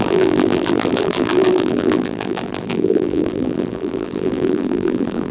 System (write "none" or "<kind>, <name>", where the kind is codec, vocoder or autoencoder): vocoder, BigVGAN v2